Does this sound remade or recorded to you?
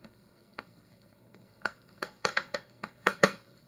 remade